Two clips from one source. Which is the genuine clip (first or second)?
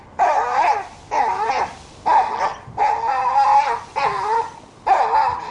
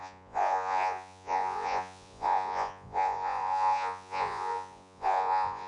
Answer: first